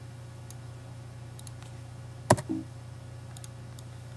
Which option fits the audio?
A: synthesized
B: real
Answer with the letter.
B